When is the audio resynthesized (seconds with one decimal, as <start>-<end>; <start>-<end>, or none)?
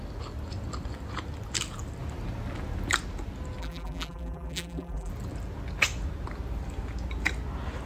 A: 3.6-5.1